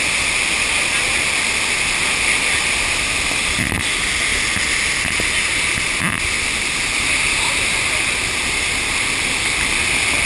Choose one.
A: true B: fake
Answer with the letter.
A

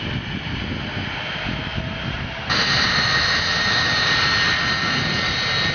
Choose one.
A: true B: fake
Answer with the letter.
A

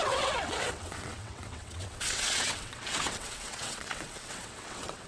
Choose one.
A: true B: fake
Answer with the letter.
B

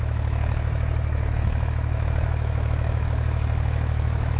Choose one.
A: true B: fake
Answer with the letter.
B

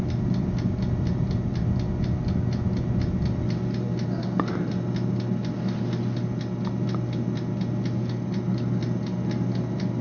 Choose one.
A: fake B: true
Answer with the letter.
B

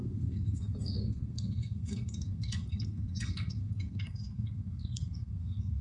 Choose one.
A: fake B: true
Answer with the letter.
A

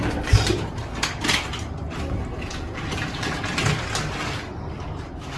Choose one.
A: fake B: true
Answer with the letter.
B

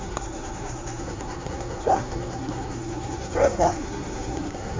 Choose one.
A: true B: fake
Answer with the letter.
B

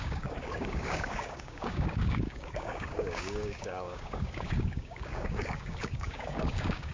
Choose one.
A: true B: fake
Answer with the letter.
B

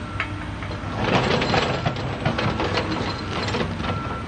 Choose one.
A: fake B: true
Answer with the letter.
B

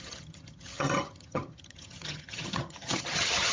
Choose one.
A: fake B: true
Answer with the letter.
A